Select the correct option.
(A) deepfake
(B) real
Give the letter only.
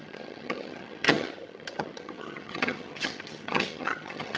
A